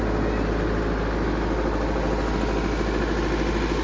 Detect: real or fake real